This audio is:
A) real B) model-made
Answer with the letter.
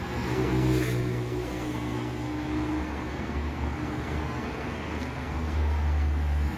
B